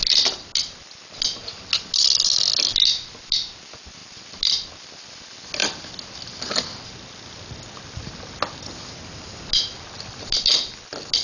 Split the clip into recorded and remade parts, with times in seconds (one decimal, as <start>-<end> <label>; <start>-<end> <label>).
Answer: 0.0-11.2 recorded